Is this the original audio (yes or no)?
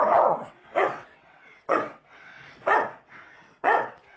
no